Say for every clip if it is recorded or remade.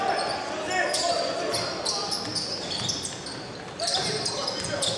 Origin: recorded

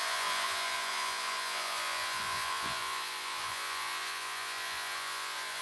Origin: remade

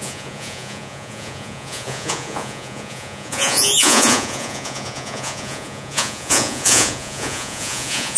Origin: remade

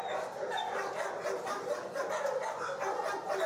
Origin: recorded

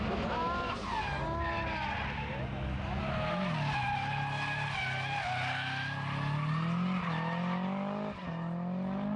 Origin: recorded